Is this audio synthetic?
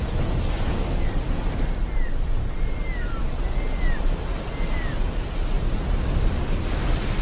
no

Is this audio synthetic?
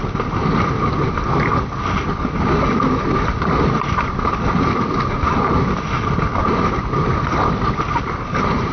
no